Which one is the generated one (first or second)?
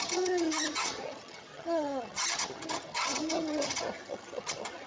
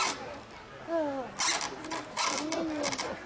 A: first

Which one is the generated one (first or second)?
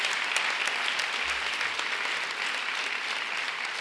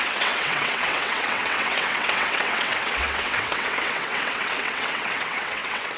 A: second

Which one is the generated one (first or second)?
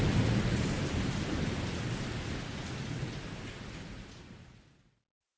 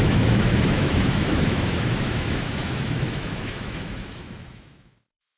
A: second